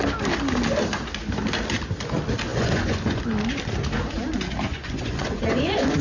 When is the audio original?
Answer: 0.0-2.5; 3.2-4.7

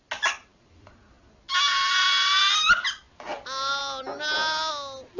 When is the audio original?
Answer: 0.0-5.2

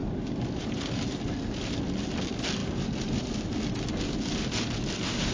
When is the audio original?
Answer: 1.3-5.3

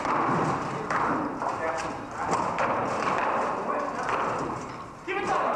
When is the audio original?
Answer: 0.0-5.6

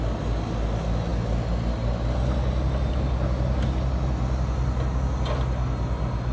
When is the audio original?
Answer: 0.0-6.3

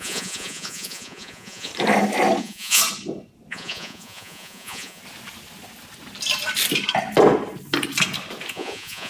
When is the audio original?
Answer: 1.7-2.4; 2.8-3.5; 5.0-8.5